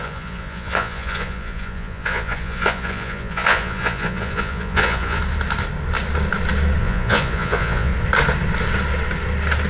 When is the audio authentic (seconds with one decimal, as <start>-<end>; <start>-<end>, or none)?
5.2-6.8; 7.9-9.7